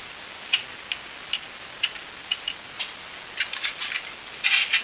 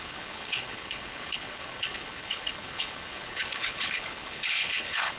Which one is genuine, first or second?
first